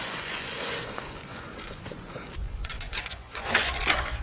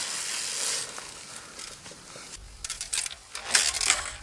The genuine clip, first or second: second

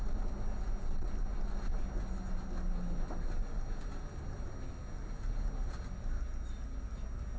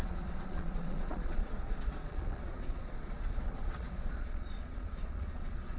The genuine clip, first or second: first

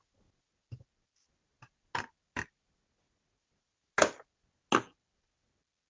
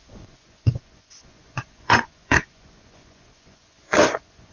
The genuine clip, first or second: first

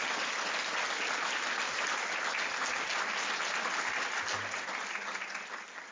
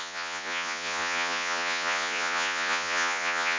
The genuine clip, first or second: first